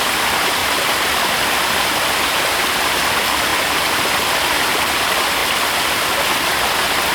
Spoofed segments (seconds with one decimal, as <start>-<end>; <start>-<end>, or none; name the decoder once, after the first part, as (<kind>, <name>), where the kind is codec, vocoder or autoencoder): 0.6-1.2 (vocoder, BigVGAN v2)